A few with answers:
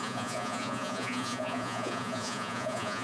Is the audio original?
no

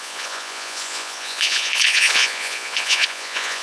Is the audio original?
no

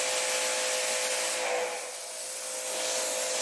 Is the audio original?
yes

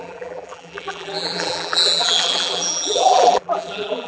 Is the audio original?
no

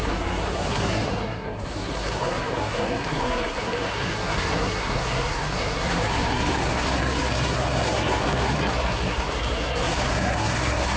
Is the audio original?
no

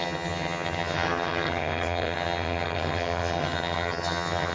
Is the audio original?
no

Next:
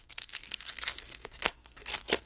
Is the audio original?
no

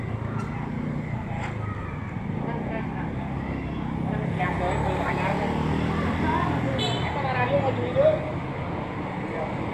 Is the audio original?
yes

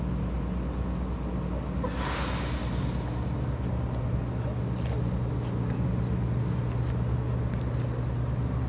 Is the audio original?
yes